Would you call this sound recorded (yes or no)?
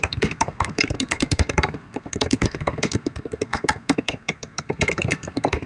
no